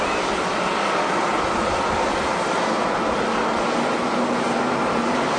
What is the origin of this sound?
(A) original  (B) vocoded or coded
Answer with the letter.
A